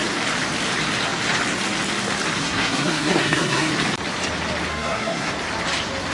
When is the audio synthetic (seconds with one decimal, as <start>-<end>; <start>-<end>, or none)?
2.4-3.7; 4.7-5.3